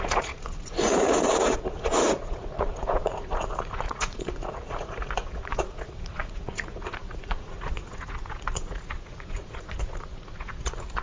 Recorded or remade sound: remade